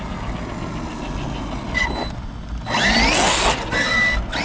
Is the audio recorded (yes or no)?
yes